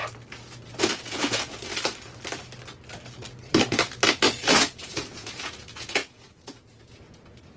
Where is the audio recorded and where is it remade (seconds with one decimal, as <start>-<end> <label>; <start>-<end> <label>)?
0.0-0.8 recorded; 0.8-1.7 remade; 1.7-4.6 recorded; 4.6-7.6 remade